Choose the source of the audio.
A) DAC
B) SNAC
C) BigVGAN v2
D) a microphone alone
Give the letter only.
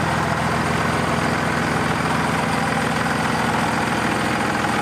D